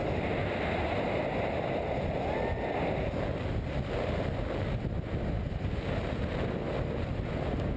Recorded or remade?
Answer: recorded